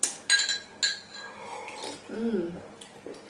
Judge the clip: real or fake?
real